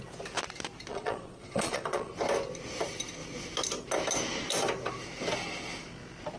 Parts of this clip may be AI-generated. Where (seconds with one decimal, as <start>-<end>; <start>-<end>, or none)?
0.9-2.1